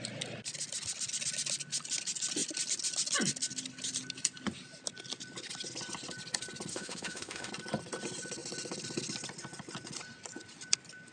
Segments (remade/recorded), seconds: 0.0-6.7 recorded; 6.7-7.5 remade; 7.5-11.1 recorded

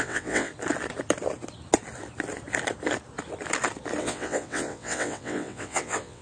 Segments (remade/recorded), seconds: 0.0-0.5 remade; 0.5-4.0 recorded; 4.0-6.2 remade

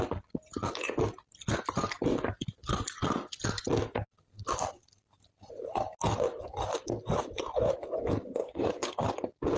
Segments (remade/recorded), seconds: 0.0-8.4 recorded; 8.4-8.9 remade; 8.9-9.6 recorded

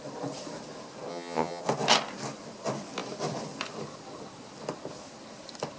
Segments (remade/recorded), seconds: 0.0-1.1 recorded; 1.1-1.6 remade; 1.6-5.8 recorded

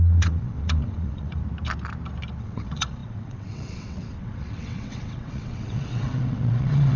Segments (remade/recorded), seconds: 0.0-1.4 remade; 1.4-2.4 recorded; 2.4-7.0 remade

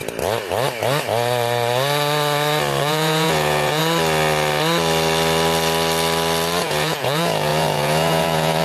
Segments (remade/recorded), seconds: 0.0-2.8 recorded; 2.8-3.8 remade; 3.8-6.6 recorded; 6.6-8.6 remade